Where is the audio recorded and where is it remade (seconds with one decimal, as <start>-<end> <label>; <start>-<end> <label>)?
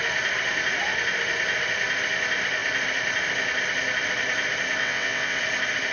0.0-4.8 recorded; 4.8-5.4 remade; 5.4-5.9 recorded